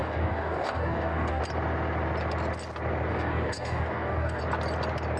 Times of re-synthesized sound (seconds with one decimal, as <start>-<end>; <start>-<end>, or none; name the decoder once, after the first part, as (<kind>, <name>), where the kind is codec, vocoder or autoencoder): 0.0-1.4 (codec, DAC); 3.1-4.4